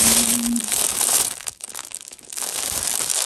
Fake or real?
fake